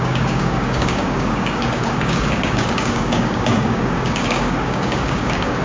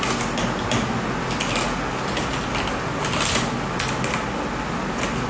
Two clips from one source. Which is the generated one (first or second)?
first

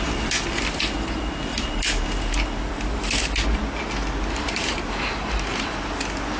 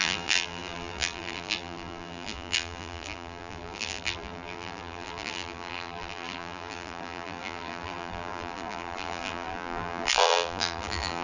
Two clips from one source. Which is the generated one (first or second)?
second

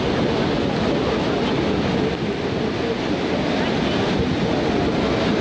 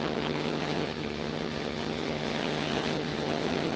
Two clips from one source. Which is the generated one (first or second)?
second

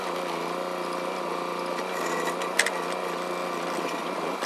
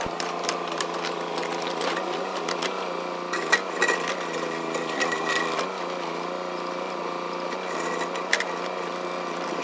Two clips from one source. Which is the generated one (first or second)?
second